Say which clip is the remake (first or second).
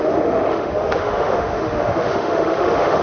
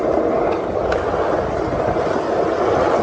first